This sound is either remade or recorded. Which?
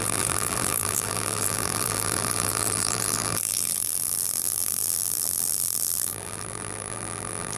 remade